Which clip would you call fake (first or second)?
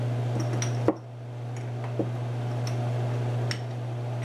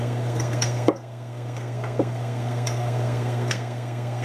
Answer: second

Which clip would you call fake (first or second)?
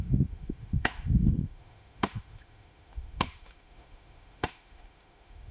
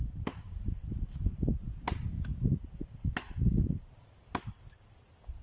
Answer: first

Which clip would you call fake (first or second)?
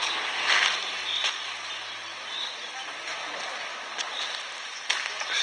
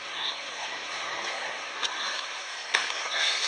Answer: second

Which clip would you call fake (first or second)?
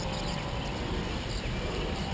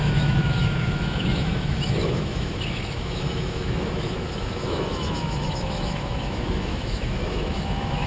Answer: second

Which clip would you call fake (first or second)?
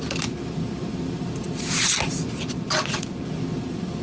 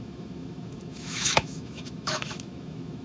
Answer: second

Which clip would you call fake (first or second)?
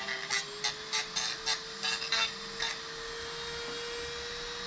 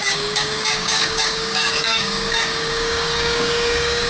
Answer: second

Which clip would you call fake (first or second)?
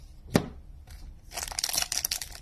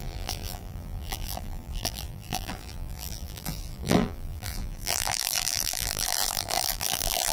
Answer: second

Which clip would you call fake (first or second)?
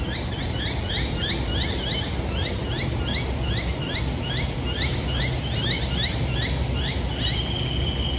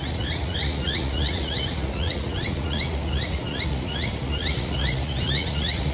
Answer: second